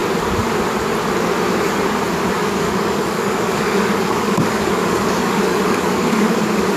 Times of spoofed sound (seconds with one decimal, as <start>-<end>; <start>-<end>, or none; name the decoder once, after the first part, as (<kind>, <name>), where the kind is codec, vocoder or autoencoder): 2.4-6.8 (codec, DAC)